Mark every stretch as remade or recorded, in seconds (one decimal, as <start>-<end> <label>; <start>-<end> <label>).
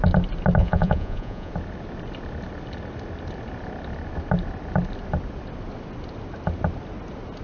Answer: 0.0-0.6 recorded; 0.6-1.5 remade; 1.5-7.4 recorded